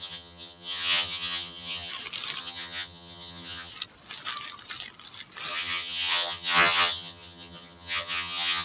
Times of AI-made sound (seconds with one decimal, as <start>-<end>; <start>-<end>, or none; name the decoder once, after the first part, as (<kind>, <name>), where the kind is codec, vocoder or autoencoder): 0.0-1.9 (vocoder, HiFi-GAN); 2.4-3.7; 5.5-8.6